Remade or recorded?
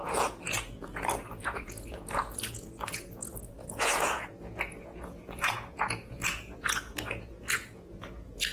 remade